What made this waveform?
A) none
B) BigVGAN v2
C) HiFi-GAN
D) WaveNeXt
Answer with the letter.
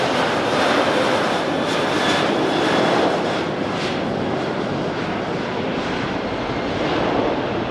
B